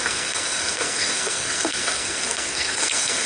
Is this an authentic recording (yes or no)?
no